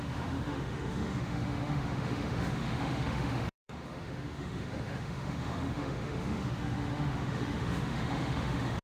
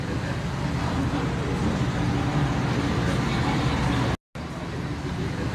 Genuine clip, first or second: second